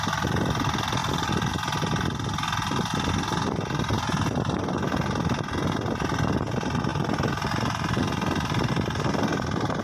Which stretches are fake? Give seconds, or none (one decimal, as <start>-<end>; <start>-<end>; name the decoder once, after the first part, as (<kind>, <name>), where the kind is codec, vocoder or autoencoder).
1.0-1.5 (vocoder, BigVGAN v2); 6.9-8.7